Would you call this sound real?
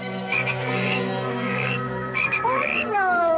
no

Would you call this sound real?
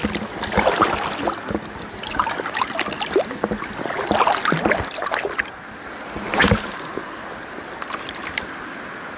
yes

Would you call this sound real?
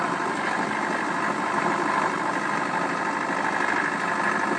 yes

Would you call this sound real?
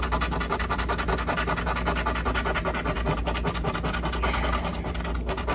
yes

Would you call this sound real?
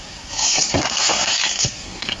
no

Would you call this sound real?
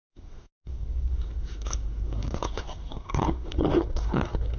no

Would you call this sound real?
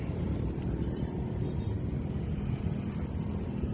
yes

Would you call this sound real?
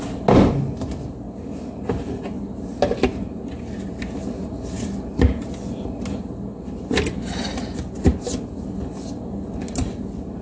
yes